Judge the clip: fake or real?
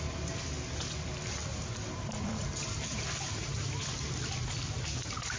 real